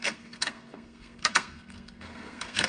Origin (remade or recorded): remade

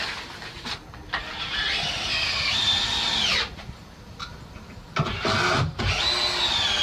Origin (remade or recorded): recorded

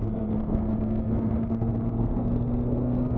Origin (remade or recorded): remade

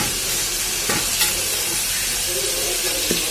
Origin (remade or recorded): recorded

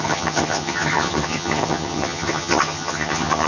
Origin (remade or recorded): remade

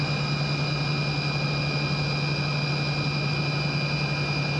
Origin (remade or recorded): recorded